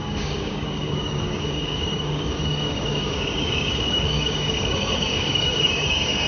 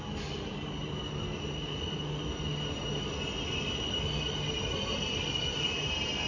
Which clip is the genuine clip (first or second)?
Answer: second